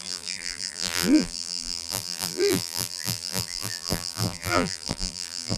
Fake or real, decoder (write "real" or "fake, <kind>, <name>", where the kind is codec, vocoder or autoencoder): fake, vocoder, BigVGAN v2